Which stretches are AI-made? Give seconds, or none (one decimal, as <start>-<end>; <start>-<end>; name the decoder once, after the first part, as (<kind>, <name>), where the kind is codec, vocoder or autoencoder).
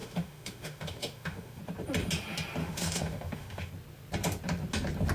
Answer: 0.0-1.6 (autoencoder, DAC-VAE); 2.6-3.7